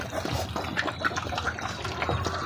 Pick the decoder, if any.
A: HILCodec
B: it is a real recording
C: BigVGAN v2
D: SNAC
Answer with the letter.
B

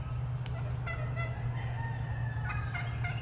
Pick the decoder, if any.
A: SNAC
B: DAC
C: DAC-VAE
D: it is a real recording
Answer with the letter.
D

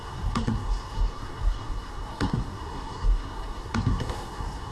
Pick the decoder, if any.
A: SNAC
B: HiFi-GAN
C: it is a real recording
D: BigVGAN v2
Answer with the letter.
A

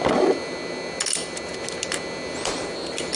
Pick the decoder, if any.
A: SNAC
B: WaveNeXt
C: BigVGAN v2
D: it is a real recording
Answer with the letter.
D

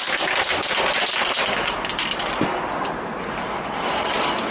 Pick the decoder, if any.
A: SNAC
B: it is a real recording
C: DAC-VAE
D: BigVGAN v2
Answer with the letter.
B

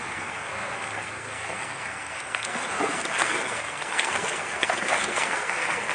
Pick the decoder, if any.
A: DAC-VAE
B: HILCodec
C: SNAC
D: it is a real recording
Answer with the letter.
C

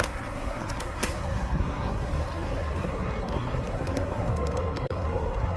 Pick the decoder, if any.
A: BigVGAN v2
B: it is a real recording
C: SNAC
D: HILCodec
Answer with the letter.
C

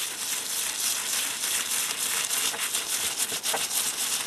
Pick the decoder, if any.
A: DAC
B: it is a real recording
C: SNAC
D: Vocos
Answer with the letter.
B